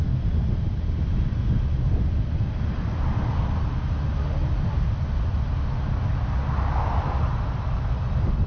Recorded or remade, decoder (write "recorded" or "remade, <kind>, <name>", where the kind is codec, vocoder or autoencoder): recorded